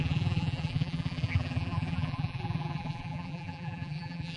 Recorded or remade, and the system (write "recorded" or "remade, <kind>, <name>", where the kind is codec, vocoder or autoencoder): remade, vocoder, BigVGAN v2